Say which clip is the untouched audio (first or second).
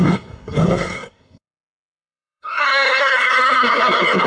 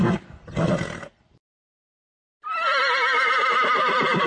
second